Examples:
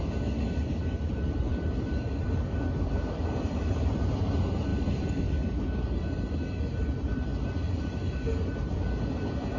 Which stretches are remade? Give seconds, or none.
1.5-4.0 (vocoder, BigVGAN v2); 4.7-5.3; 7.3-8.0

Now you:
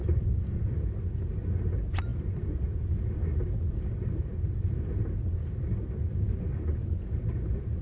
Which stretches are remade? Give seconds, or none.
0.0-0.7 (vocoder, BigVGAN v2); 2.1-6.5

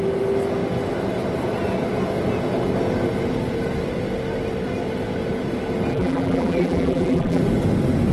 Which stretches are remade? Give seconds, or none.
5.9-7.4 (vocoder, BigVGAN v2)

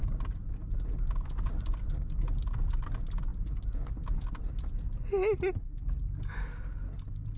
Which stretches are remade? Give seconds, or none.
none

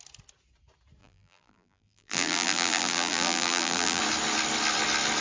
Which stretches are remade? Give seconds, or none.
1.0-4.0 (vocoder, BigVGAN v2)

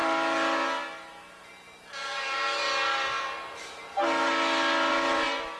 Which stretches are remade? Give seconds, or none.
4.9-5.6 (vocoder, BigVGAN v2)